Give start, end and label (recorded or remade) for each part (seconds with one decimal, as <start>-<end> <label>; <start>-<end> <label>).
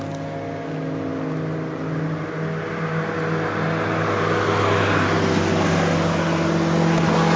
0.0-7.4 recorded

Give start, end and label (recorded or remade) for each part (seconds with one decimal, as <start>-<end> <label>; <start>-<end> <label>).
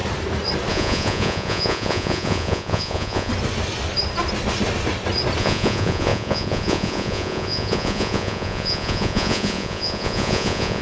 0.0-0.7 recorded; 0.7-3.3 remade; 3.3-5.4 recorded; 5.4-10.8 remade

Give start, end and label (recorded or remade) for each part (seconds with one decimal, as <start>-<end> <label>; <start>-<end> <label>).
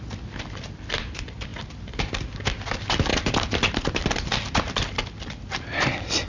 0.0-1.5 recorded; 1.5-2.1 remade; 2.1-6.3 recorded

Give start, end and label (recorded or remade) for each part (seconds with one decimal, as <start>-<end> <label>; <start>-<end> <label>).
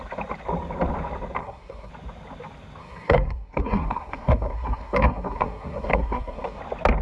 0.0-1.4 recorded; 1.4-1.9 remade; 1.9-2.8 recorded; 2.8-6.6 remade; 6.6-7.0 recorded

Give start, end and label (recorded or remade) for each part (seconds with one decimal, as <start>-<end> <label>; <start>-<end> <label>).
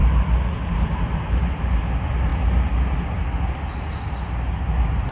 0.0-5.1 recorded